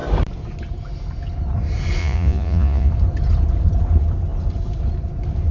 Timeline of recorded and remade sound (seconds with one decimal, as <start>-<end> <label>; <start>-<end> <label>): 0.0-2.0 recorded; 2.0-2.9 remade; 2.9-5.5 recorded